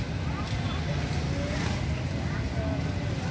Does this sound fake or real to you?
real